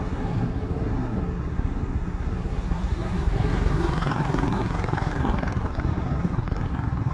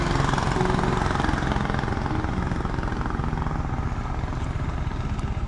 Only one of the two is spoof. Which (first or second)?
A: first